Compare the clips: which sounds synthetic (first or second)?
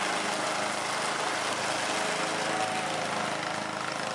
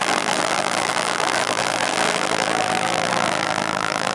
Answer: second